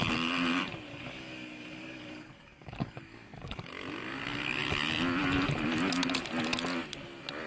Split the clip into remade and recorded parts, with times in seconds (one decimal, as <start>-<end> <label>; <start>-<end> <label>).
0.0-0.9 recorded; 0.9-3.7 remade; 3.7-7.5 recorded